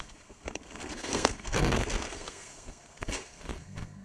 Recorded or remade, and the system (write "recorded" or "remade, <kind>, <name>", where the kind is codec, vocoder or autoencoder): remade, codec, SNAC